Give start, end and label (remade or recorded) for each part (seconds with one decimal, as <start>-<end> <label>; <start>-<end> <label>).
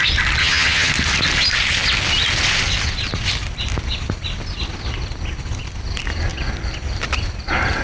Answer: 0.0-0.4 recorded; 0.4-0.9 remade; 0.9-7.8 recorded